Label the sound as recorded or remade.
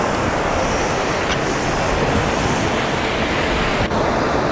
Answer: recorded